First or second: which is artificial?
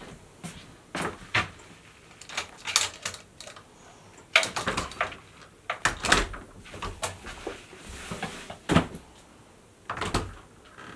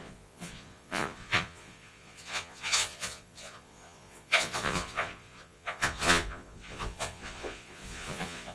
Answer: second